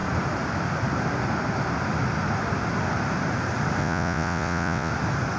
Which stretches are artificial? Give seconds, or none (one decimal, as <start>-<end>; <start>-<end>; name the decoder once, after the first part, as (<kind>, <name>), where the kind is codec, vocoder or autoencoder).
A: 3.8-4.9 (vocoder, Vocos)